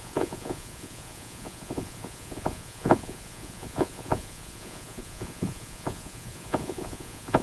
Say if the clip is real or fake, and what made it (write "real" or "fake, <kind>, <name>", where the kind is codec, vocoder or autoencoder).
fake, vocoder, Vocos